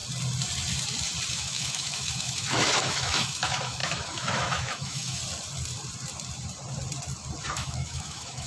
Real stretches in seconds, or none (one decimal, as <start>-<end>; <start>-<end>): 0.0-1.3; 5.2-7.5